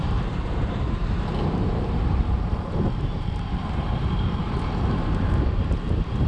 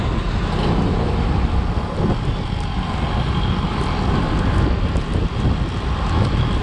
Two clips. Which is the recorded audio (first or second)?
second